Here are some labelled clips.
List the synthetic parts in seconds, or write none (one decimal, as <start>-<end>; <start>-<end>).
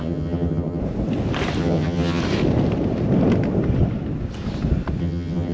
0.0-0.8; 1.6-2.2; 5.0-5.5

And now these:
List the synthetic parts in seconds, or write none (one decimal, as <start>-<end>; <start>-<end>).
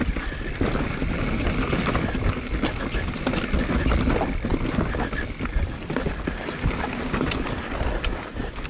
none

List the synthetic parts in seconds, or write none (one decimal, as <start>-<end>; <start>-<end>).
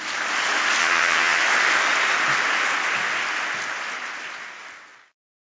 0.8-1.4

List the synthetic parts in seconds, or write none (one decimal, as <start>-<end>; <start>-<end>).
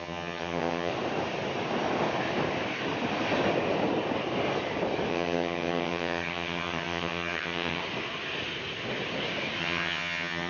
0.0-0.9; 5.1-7.8; 9.6-10.5